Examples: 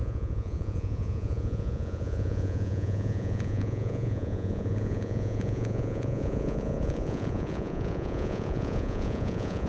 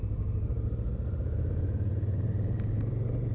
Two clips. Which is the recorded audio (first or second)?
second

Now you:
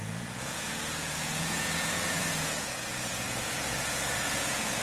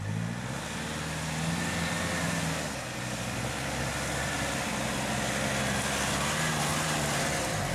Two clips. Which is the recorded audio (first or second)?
second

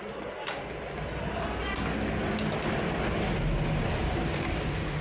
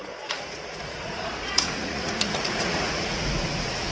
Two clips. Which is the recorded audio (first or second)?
first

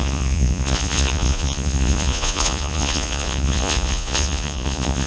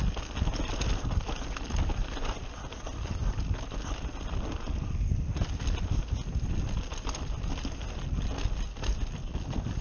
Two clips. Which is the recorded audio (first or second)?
second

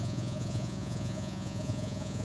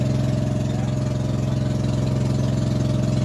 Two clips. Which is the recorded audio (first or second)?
second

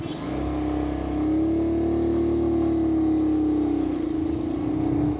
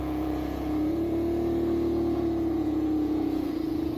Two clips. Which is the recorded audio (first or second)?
first